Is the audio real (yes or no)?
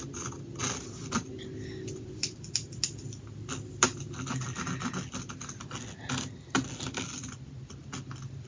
yes